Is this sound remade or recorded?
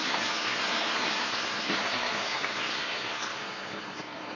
remade